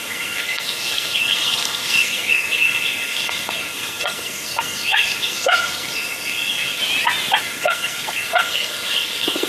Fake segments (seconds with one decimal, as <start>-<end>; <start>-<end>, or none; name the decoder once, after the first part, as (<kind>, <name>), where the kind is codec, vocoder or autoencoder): 0.0-6.8 (codec, SNAC); 7.4-9.5